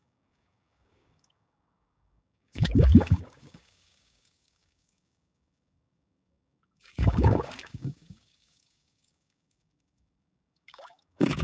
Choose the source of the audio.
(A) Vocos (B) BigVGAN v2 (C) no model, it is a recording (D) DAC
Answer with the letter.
D